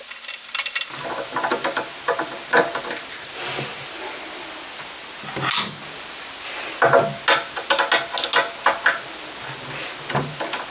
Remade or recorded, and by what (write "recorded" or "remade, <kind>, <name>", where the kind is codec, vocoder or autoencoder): recorded